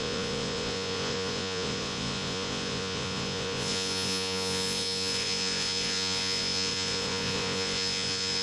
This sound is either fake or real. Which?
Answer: fake